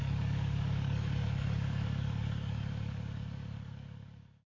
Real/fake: fake